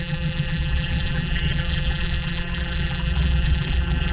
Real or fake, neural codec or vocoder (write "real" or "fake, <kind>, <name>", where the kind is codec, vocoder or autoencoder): fake, vocoder, BigVGAN v2